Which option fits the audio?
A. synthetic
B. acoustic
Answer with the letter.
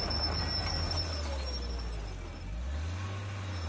B